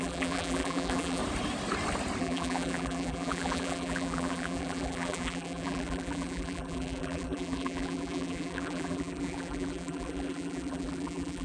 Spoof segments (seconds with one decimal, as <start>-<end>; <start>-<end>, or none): 0.0-1.2; 2.2-11.4